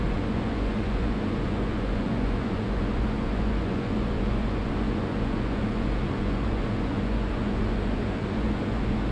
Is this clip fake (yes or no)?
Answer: yes